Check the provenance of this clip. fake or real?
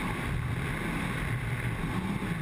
real